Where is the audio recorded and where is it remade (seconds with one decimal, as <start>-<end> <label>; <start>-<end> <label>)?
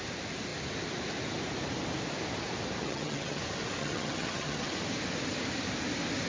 0.0-2.8 recorded; 2.8-3.4 remade; 3.4-3.8 recorded; 3.8-4.7 remade; 4.7-6.3 recorded